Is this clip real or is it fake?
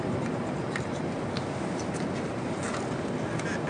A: real